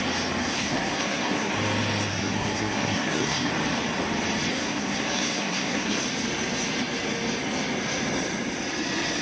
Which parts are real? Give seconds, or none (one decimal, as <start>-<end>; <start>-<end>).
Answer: 0.0-0.4; 1.5-2.1; 3.5-4.5; 6.0-9.2